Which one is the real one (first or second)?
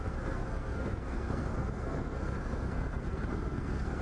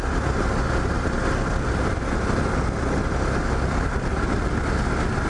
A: second